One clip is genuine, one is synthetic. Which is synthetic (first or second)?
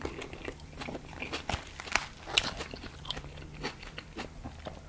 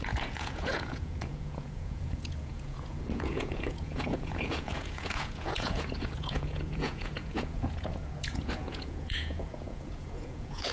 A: second